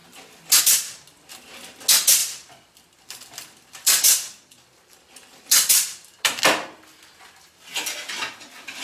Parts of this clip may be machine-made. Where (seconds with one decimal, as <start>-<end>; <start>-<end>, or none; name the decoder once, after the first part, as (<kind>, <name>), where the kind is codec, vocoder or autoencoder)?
0.0-0.6 (vocoder, BigVGAN v2); 2.2-6.4